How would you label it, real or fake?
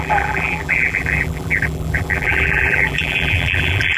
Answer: fake